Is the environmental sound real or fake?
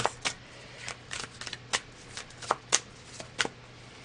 real